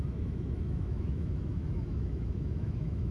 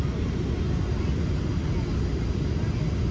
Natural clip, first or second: second